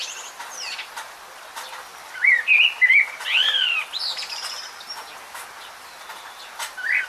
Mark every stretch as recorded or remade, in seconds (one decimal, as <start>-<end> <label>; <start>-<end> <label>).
0.0-7.1 recorded